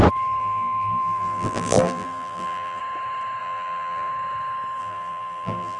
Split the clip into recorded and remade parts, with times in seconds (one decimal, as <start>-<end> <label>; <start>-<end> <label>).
0.0-0.4 recorded; 0.4-2.8 remade; 2.8-3.4 recorded; 3.4-4.1 remade; 4.1-4.8 recorded; 4.8-5.8 remade